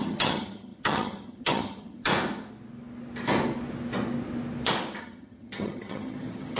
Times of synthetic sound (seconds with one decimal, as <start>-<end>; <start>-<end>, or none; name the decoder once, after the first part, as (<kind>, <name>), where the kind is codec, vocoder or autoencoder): 0.0-2.1 (vocoder, HiFi-GAN); 5.0-6.6